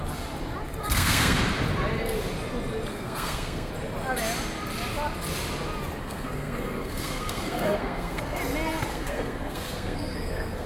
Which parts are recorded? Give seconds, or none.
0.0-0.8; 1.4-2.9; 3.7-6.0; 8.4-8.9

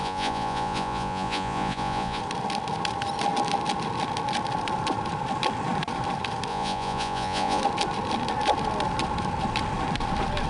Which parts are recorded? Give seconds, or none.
2.2-6.5; 7.6-10.5

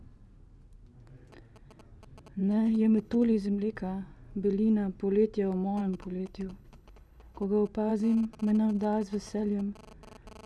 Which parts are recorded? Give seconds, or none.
0.0-2.4; 3.7-5.8; 7.4-10.5

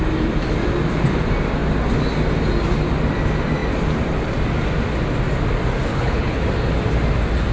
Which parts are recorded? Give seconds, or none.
0.0-5.9; 6.5-7.5

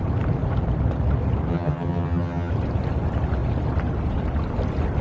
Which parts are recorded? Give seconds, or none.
0.0-1.5; 2.5-5.0

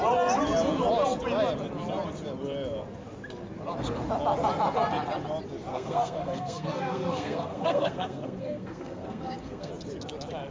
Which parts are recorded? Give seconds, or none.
0.0-5.7; 9.7-10.5

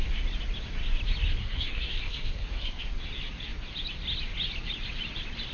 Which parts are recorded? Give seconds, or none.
0.0-1.4; 2.8-5.5